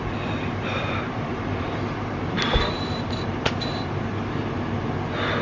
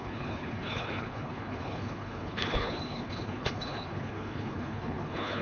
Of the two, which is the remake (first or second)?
second